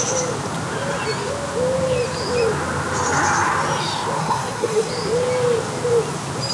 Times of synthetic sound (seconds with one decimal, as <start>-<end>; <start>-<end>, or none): 4.2-4.9